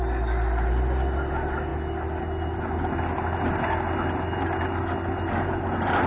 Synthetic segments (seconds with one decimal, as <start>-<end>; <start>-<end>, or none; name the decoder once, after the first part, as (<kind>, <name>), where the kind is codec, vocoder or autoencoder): none